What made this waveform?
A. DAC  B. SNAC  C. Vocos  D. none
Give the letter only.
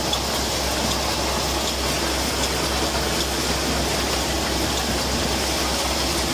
D